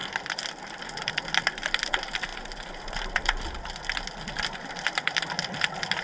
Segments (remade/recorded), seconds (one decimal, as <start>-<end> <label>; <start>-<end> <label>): 0.0-6.0 recorded